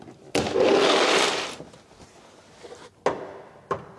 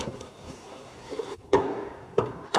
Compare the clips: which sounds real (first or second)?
first